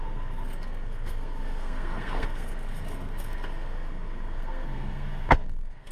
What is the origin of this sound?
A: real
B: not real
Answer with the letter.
B